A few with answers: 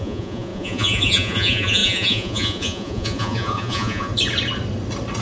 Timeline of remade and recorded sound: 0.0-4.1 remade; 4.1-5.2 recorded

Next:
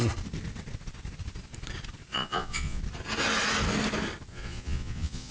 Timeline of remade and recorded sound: 0.0-2.1 recorded; 2.1-2.8 remade; 2.8-4.3 recorded; 4.3-5.3 remade

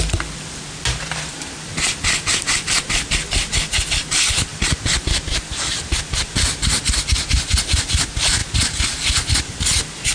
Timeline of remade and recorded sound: 0.0-10.1 recorded

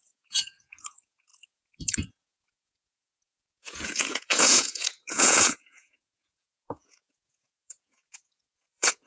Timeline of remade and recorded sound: 0.0-9.1 remade

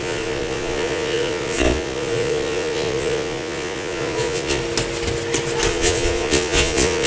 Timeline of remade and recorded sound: 0.0-4.6 remade; 4.6-5.7 recorded; 5.7-7.1 remade

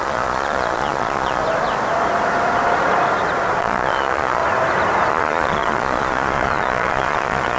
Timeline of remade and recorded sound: 0.0-1.4 remade; 1.4-3.6 recorded; 3.6-4.4 remade; 4.4-5.1 recorded; 5.1-7.6 remade